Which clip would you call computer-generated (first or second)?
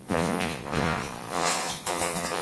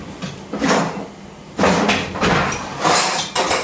first